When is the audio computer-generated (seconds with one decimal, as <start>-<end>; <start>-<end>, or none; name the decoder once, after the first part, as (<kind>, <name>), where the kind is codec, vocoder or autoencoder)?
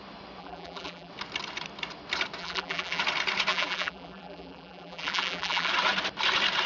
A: 0.4-1.1 (vocoder, BigVGAN v2); 2.4-3.0; 3.5-5.7